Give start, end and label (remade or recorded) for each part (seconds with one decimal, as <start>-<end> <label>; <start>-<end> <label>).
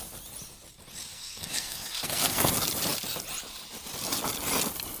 0.0-1.1 recorded; 1.1-2.5 remade; 2.5-5.0 recorded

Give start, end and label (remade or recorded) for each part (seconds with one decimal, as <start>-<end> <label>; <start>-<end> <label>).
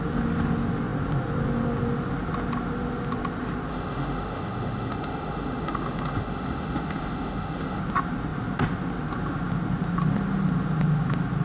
0.0-3.7 recorded; 3.7-7.8 remade; 7.8-11.4 recorded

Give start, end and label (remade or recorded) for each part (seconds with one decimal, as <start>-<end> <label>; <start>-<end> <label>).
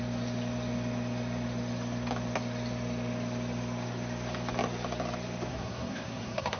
0.0-5.5 recorded; 5.5-6.6 remade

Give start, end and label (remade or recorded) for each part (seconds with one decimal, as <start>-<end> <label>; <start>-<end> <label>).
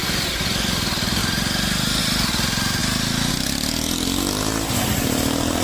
0.0-5.6 recorded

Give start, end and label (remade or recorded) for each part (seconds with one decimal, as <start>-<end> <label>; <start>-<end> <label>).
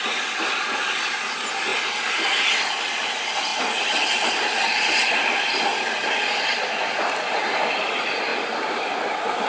0.0-1.7 recorded; 1.7-2.7 remade; 2.7-5.7 recorded; 5.7-7.4 remade; 7.4-9.5 recorded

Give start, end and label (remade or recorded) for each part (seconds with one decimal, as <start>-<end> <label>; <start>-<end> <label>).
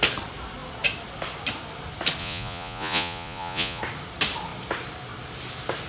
0.0-2.2 recorded; 2.2-3.8 remade; 3.8-5.9 recorded